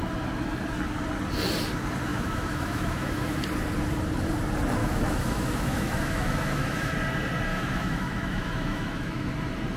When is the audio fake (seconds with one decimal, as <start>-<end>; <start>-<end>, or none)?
2.1-3.4; 4.8-6.9; 7.5-9.3

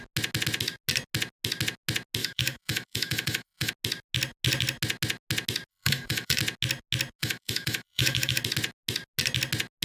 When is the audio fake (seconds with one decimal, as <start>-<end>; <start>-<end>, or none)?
2.2-3.7; 5.7-6.4; 7.2-8.4